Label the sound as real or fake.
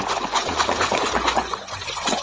fake